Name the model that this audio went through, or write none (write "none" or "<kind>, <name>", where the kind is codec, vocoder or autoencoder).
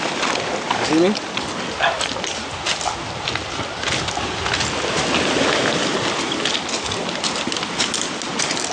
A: none